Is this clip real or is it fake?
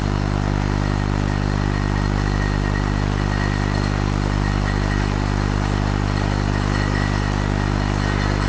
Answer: real